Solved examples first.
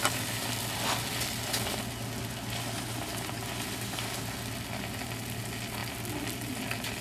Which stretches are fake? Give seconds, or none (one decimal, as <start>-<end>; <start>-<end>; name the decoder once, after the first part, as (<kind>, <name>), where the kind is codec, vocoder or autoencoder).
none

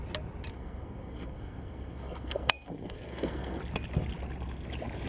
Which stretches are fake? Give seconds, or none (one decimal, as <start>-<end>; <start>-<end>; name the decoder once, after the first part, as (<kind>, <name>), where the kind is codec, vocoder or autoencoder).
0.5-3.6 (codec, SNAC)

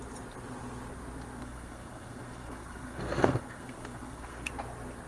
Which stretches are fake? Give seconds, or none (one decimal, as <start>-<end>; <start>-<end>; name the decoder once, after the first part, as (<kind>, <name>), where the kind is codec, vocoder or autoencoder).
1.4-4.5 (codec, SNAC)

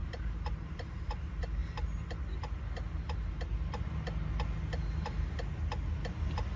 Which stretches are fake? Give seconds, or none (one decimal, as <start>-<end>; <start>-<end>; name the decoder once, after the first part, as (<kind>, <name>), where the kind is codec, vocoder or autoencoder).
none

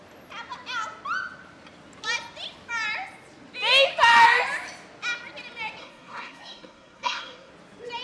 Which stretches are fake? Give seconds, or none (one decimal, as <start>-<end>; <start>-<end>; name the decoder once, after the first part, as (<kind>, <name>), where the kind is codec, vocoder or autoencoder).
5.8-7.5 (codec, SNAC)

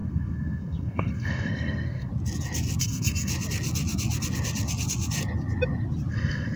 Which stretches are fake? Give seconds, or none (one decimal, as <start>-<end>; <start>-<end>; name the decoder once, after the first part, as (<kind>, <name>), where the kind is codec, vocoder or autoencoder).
0.0-2.1 (codec, SNAC); 2.8-3.3; 6.1-6.6